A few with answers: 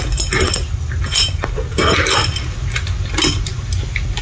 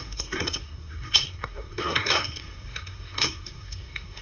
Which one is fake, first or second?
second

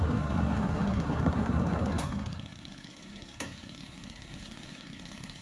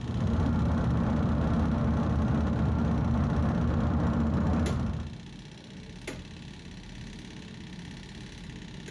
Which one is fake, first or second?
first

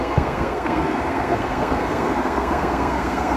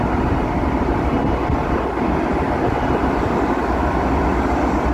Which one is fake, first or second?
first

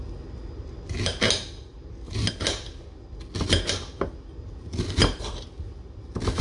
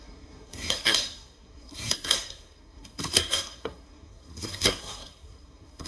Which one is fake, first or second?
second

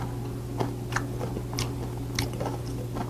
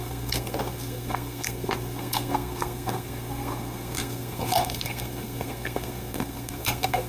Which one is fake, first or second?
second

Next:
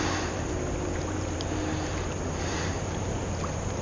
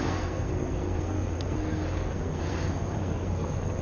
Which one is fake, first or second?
second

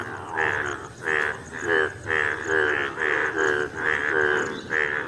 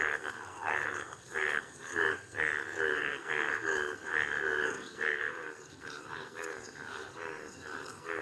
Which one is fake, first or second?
second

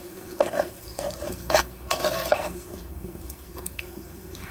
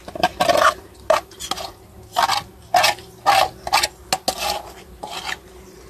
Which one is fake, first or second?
first